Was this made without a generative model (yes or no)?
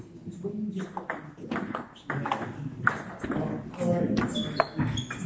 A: yes